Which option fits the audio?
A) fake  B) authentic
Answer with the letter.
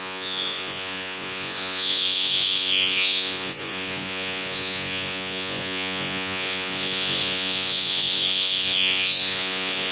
A